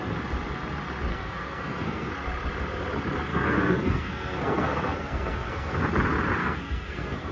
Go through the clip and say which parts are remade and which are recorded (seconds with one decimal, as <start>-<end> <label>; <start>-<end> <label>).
0.0-1.1 recorded; 1.1-2.1 remade; 2.1-3.3 recorded; 3.3-5.8 remade; 5.8-6.4 recorded; 6.4-7.3 remade